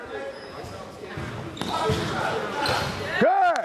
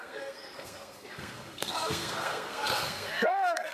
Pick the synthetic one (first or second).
second